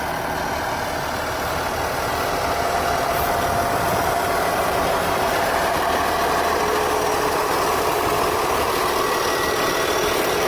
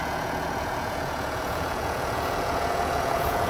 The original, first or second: first